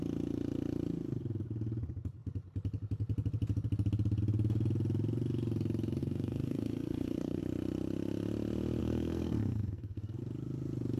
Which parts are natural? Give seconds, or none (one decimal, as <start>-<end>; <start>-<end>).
0.0-6.0; 7.4-8.8; 10.2-11.0